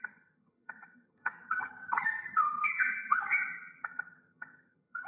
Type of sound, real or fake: fake